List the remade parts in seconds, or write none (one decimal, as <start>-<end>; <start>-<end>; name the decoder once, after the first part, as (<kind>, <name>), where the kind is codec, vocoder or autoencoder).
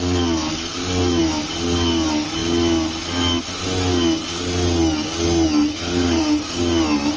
5.7-6.6 (codec, SNAC)